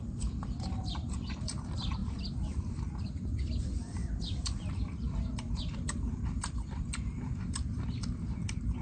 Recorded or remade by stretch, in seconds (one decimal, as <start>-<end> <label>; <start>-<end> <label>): 0.0-8.8 remade